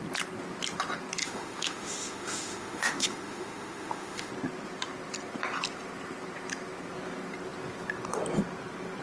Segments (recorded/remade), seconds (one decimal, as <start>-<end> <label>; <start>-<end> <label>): 0.0-1.2 recorded; 1.2-4.3 remade; 4.3-9.0 recorded